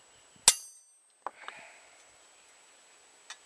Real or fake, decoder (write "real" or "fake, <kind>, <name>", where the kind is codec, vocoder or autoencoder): real